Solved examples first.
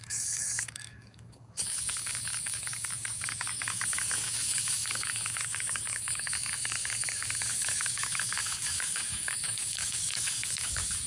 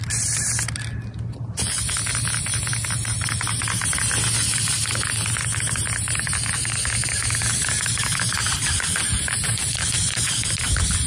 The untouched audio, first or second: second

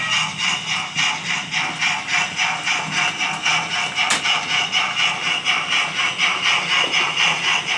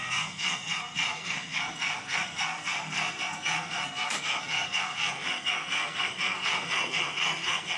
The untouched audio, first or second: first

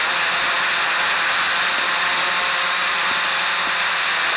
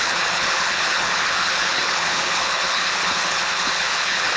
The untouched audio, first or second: first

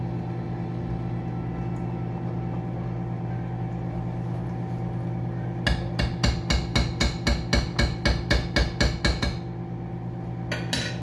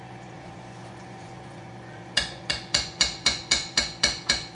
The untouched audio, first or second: first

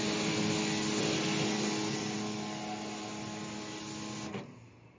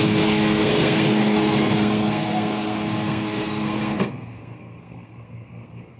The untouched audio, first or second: first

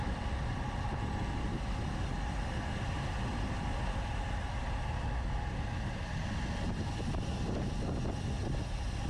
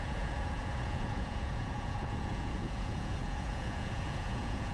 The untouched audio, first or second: first